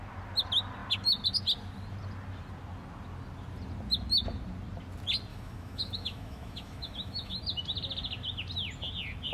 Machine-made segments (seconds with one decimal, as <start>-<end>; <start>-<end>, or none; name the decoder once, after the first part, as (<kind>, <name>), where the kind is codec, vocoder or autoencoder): 5.3-7.4 (autoencoder, DAC-VAE)